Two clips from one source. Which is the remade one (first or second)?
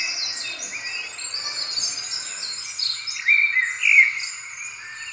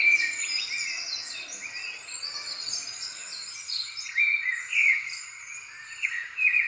second